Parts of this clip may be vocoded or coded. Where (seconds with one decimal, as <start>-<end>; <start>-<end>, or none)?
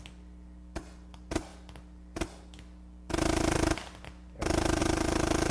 none